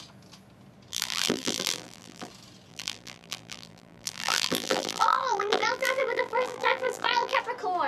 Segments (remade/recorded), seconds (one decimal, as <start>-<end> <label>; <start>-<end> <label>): 0.0-0.9 recorded; 0.9-2.3 remade; 2.3-2.7 recorded; 2.7-7.4 remade; 7.4-7.9 recorded